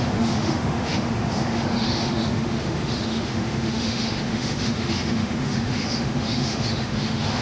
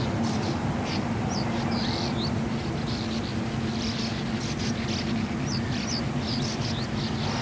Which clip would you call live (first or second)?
second